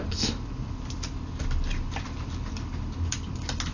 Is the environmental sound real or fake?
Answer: real